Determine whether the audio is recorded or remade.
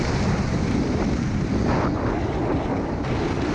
recorded